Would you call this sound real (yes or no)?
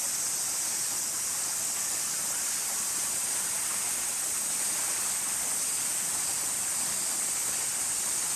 yes